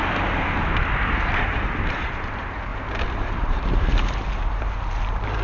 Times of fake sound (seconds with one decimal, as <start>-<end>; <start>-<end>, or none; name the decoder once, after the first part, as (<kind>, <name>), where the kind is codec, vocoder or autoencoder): 1.3-2.7 (vocoder, BigVGAN v2); 3.3-5.4